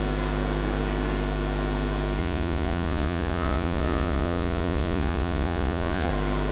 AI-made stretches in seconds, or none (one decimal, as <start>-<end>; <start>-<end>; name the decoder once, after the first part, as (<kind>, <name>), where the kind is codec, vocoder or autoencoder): 2.2-6.1 (vocoder, Vocos)